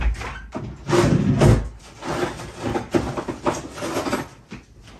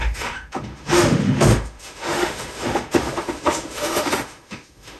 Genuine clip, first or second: first